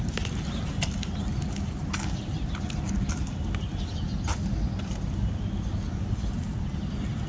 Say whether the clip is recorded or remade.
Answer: recorded